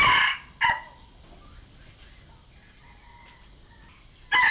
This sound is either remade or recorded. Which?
recorded